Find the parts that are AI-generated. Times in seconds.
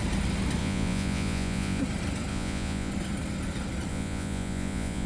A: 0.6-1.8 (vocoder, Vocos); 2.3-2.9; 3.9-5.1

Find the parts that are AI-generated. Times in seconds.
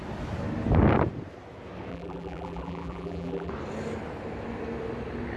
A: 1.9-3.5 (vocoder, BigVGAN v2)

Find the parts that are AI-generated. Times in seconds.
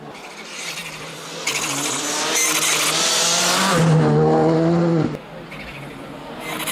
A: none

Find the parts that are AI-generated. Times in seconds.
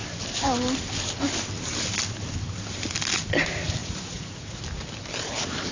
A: 3.8-4.6 (vocoder, Vocos)